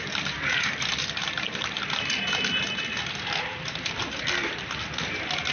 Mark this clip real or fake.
real